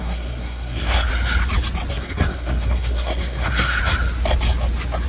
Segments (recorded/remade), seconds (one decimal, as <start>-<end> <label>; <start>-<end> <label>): 0.0-1.1 remade; 1.1-1.9 recorded; 1.9-3.8 remade; 3.8-5.1 recorded